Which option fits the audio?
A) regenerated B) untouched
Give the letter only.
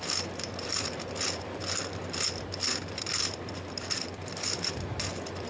A